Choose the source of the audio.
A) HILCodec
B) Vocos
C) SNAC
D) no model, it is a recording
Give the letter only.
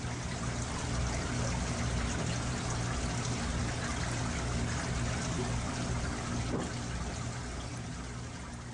D